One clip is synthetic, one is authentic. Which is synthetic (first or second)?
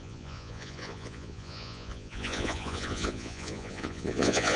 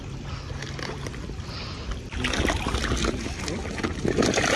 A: first